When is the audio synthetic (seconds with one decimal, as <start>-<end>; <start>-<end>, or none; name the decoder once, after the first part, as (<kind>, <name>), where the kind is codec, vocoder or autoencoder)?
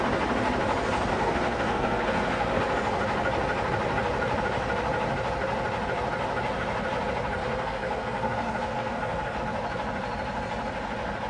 1.1-2.6 (codec, SNAC); 7.4-9.4